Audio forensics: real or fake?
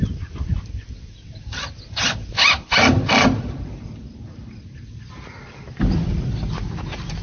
real